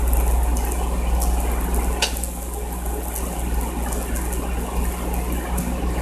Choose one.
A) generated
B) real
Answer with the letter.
B